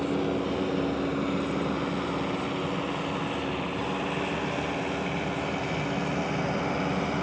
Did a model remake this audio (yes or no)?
no